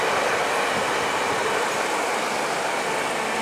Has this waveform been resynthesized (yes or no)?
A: no